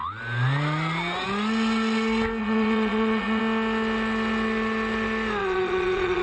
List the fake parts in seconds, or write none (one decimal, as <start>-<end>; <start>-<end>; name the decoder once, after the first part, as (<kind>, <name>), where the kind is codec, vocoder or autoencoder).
2.4-3.4 (vocoder, Vocos); 5.4-6.2